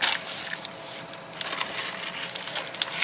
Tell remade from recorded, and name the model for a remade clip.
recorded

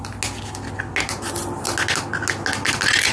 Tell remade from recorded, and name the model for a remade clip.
recorded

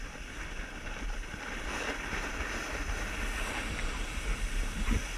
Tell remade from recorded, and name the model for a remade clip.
recorded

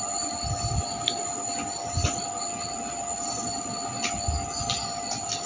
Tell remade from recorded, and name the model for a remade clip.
recorded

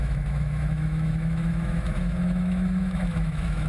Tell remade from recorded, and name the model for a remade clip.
remade, autoencoder, DAC-VAE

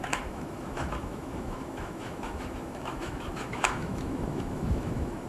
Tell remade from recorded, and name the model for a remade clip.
remade, autoencoder, DAC-VAE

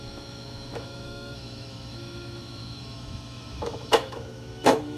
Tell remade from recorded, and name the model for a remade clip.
remade, autoencoder, DAC-VAE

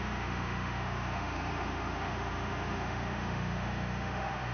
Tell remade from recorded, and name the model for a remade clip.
remade, autoencoder, DAC-VAE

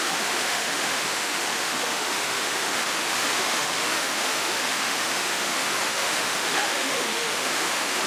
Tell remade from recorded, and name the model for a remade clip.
remade, autoencoder, DAC-VAE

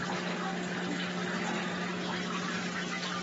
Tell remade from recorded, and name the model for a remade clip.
recorded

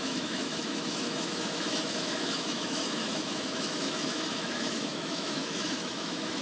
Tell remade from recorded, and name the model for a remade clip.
remade, autoencoder, DAC-VAE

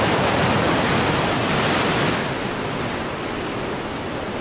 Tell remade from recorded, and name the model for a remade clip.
recorded